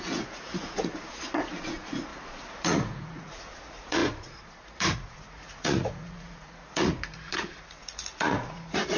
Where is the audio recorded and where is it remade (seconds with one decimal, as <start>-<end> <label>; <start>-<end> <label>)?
0.0-9.0 remade